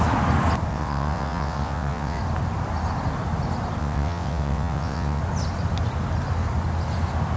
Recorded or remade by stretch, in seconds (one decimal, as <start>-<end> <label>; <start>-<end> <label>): 0.0-0.7 recorded; 0.7-2.2 remade; 2.2-3.8 recorded; 3.8-5.2 remade; 5.2-7.4 recorded